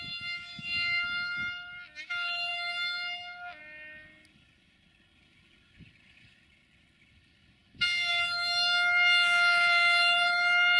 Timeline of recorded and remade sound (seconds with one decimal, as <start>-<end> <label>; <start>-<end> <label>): 0.0-10.8 recorded